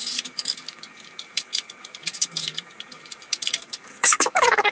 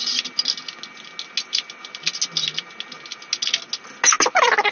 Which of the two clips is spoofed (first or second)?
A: first